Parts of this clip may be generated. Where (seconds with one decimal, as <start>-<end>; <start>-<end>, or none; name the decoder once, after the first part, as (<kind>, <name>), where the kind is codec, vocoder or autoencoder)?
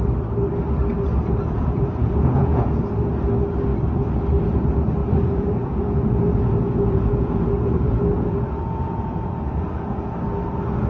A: 1.2-3.0 (vocoder, Vocos); 5.0-10.1